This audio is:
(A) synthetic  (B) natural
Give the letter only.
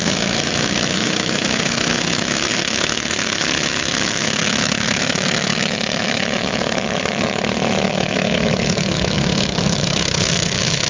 A